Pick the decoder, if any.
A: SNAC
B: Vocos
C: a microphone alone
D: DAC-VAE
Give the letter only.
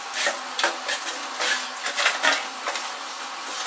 C